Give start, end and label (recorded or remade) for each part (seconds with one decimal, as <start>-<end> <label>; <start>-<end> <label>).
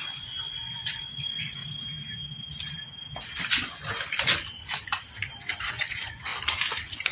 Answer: 0.0-1.6 remade; 1.6-5.7 recorded; 5.7-6.3 remade; 6.3-7.1 recorded